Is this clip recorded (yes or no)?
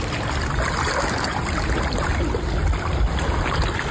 yes